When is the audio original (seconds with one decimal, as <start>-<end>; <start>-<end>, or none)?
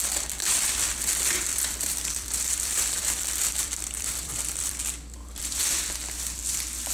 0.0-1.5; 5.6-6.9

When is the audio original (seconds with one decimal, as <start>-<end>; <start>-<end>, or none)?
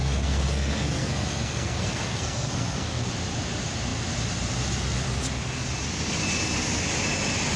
3.1-7.6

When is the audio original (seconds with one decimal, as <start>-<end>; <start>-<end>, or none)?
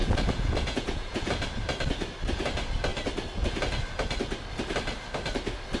1.3-5.8